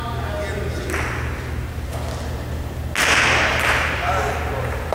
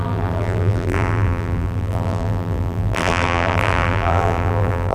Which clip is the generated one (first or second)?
second